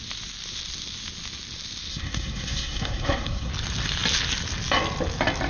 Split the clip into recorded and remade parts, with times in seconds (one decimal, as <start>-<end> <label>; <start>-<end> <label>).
0.0-1.9 recorded; 1.9-3.5 remade; 3.5-5.5 recorded